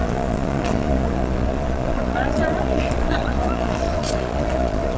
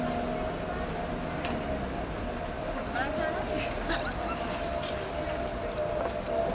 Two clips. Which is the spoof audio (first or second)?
first